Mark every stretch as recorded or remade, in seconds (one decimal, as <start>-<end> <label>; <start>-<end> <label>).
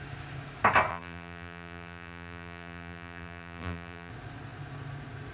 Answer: 0.0-0.9 recorded; 0.9-4.1 remade; 4.1-5.3 recorded